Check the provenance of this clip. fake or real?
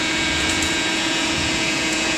fake